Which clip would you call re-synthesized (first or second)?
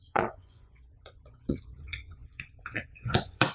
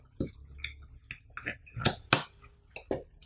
first